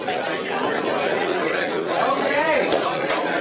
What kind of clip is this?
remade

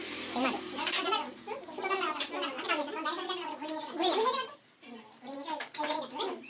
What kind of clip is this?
remade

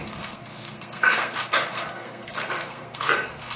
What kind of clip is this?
remade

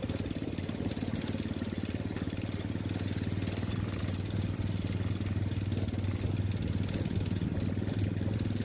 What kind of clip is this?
recorded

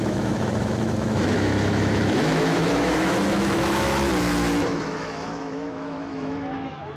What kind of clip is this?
remade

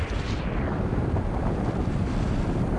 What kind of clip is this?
recorded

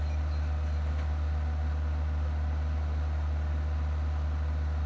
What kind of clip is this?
recorded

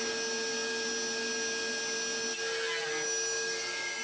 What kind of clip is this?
recorded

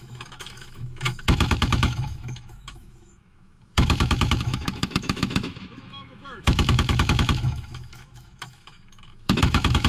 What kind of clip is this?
remade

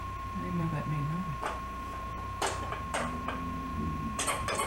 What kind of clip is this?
remade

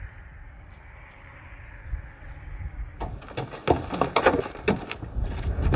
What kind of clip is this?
recorded